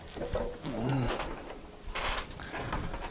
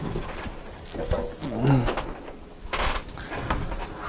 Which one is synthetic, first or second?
first